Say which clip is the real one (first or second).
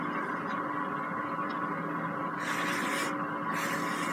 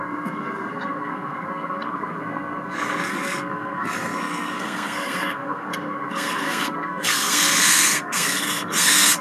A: first